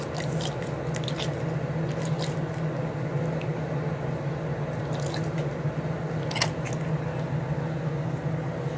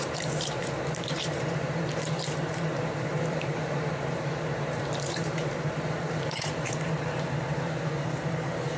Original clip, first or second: first